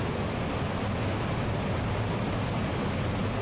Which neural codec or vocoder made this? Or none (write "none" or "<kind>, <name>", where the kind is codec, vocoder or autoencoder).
none